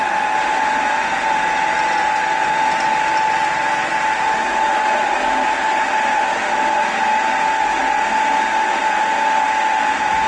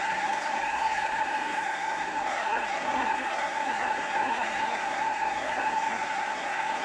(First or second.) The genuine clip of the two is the first